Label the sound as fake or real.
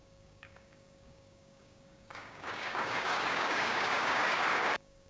fake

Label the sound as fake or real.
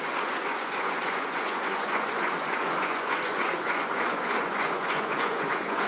fake